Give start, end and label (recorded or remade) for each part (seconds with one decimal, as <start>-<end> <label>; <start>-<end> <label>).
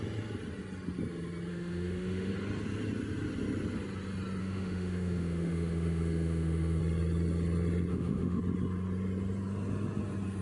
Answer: 0.0-1.5 recorded; 1.5-2.3 remade; 2.3-4.4 recorded; 4.4-6.8 remade; 6.8-7.9 recorded; 7.9-8.4 remade; 8.4-10.4 recorded